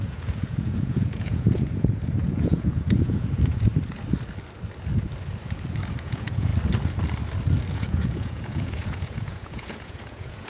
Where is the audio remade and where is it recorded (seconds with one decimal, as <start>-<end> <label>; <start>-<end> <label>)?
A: 0.0-3.7 remade; 3.7-6.0 recorded; 6.0-6.5 remade; 6.5-7.7 recorded; 7.7-10.5 remade